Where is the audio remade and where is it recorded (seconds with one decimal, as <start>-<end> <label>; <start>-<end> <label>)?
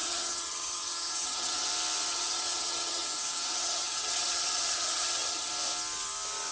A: 0.0-1.7 remade; 1.7-2.1 recorded; 2.1-5.5 remade; 5.5-6.5 recorded